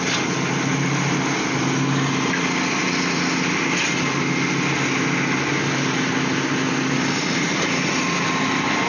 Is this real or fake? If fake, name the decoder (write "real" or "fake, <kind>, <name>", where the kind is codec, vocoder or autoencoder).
real